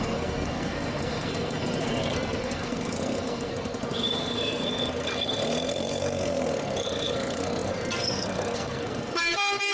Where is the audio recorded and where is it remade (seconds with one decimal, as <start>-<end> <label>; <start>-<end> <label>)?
0.0-9.7 remade